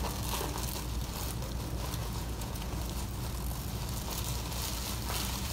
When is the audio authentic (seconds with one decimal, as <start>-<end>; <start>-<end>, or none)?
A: 0.0-2.0; 2.8-5.5